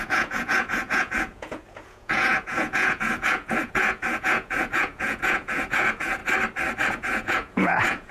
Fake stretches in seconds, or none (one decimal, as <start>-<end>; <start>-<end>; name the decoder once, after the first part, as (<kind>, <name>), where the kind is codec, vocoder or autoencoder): 0.0-6.2 (vocoder, Vocos); 6.9-8.1